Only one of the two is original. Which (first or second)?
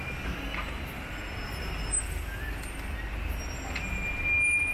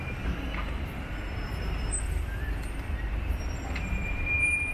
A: first